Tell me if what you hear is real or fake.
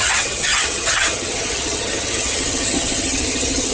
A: fake